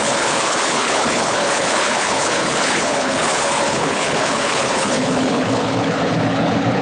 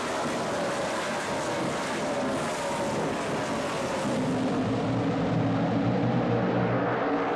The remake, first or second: first